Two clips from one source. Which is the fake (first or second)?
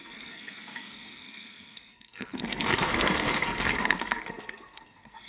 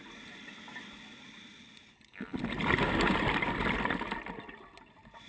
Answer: first